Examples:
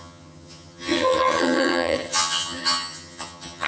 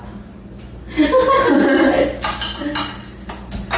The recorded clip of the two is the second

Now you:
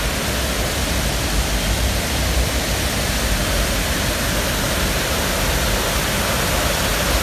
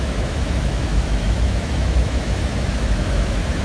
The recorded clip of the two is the first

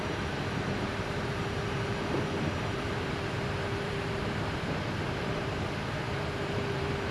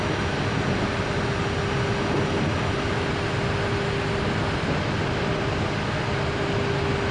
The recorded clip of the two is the second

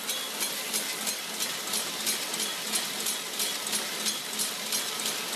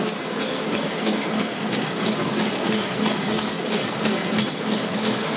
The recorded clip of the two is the first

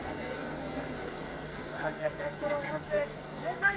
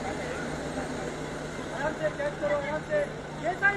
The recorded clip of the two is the second